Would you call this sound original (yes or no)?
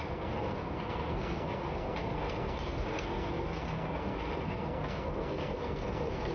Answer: no